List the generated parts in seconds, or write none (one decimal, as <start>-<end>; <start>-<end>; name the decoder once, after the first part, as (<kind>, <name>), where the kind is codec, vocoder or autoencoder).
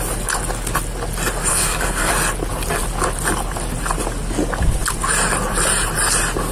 1.5-2.1 (codec, SNAC)